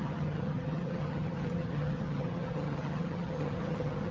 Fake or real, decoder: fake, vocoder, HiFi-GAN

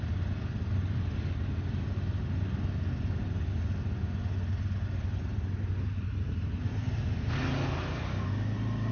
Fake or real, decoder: real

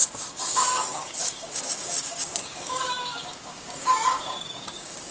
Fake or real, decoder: fake, codec, DAC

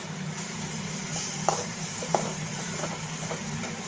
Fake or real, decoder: fake, vocoder, BigVGAN v2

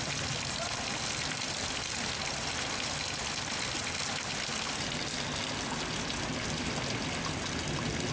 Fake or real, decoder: real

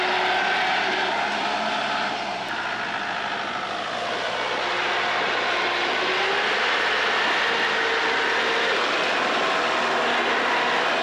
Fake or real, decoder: real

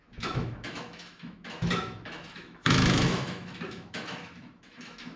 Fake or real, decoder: fake, autoencoder, DAC-VAE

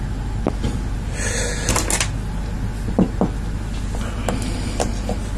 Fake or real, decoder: real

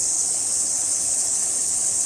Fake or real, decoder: fake, codec, HILCodec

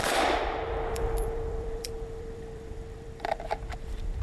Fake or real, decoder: fake, vocoder, BigVGAN v2